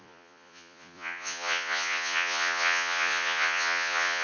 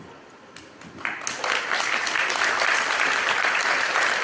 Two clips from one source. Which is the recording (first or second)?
second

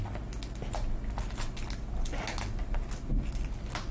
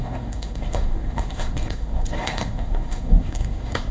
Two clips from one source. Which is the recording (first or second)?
first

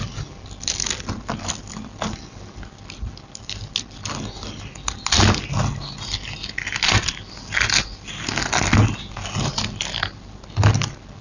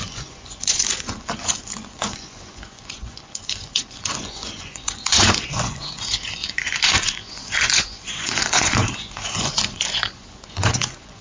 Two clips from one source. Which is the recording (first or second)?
first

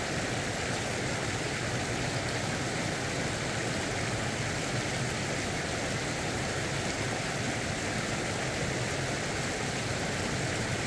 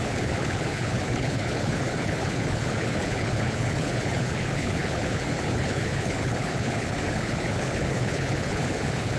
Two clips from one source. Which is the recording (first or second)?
first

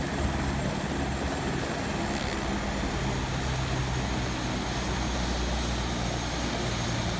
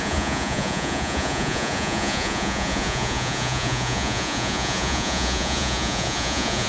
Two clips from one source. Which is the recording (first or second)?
first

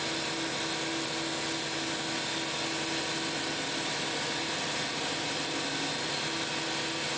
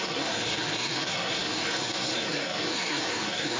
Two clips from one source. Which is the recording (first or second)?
first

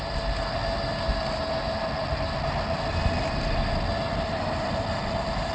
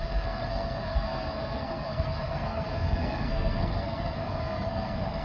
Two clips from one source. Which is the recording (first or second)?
first